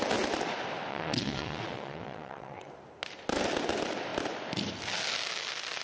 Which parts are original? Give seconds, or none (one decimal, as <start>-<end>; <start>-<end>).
0.0-0.9; 2.7-5.8